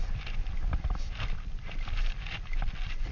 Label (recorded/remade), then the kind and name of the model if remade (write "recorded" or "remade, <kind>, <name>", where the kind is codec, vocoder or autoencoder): recorded